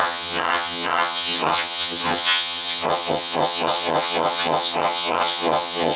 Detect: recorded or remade remade